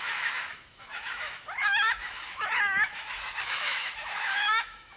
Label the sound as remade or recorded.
remade